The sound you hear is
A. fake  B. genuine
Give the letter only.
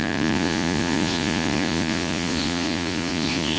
A